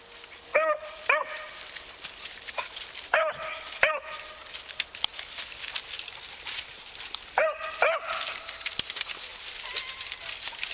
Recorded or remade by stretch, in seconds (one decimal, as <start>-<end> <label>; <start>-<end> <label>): 0.0-10.7 recorded